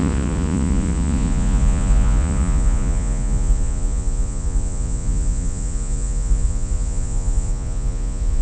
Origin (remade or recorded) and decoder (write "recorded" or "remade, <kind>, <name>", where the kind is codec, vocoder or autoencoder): remade, vocoder, Vocos